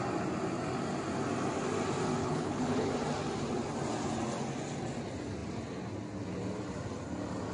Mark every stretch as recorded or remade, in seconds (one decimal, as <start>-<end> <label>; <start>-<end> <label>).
0.0-2.2 recorded; 2.2-2.9 remade; 2.9-7.5 recorded